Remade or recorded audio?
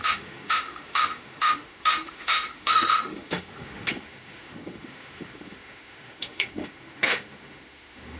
remade